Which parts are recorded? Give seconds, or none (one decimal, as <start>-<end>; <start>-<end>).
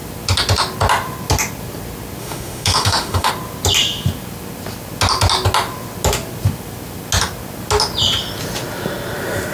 0.0-2.2; 3.3-9.5